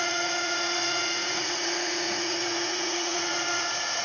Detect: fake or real fake